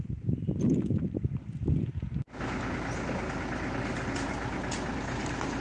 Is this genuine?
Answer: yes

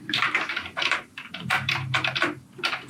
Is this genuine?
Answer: no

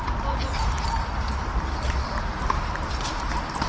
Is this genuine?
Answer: yes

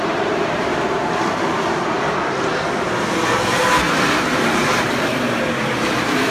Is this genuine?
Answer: no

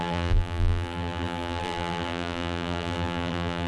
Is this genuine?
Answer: no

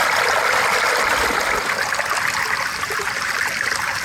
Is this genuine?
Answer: yes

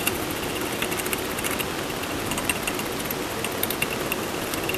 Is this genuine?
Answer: yes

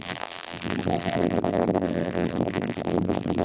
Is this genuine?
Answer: no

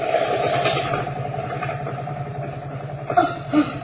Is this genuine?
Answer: no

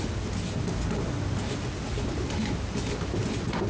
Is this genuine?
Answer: yes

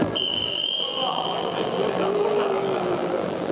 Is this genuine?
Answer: no